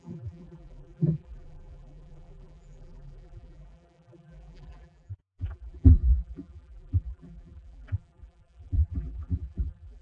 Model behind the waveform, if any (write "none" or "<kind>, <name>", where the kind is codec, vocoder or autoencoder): vocoder, BigVGAN v2